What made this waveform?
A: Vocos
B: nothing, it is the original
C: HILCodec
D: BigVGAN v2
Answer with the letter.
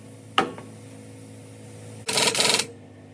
B